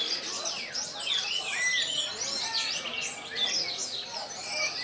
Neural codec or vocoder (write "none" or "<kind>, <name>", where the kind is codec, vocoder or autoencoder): none